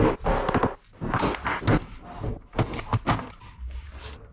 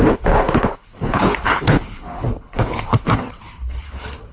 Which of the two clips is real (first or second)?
first